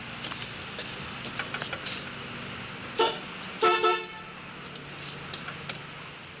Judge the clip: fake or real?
real